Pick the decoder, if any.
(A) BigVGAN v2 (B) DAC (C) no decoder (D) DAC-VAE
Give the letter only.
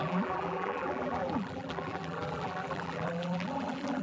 A